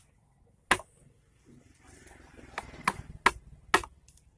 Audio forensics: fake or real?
real